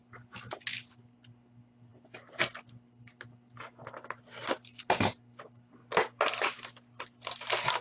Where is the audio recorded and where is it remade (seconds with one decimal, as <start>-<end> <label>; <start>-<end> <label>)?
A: 0.0-7.8 recorded